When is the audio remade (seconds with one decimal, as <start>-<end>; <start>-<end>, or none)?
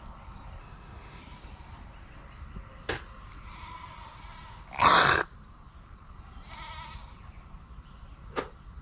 0.6-1.2